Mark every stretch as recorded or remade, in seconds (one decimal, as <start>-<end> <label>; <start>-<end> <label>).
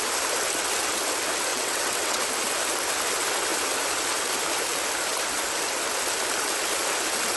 0.0-1.5 recorded; 1.5-2.2 remade; 2.2-7.4 recorded